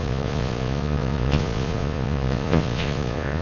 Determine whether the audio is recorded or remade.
remade